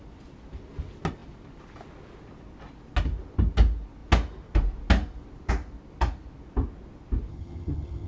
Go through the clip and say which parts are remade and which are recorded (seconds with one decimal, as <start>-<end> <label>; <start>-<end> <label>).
0.0-7.3 recorded; 7.3-8.1 remade